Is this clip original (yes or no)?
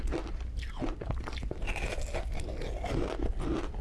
yes